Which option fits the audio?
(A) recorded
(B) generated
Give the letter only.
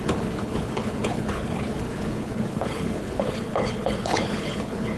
B